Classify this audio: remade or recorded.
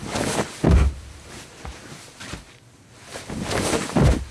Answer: recorded